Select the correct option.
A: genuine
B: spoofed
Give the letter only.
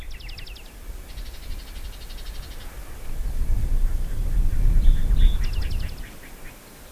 A